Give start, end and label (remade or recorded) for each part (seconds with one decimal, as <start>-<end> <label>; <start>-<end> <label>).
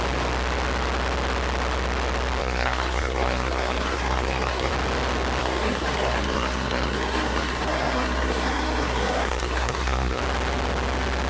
0.0-2.4 recorded; 2.4-4.7 remade; 4.7-5.4 recorded; 5.4-10.2 remade; 10.2-11.3 recorded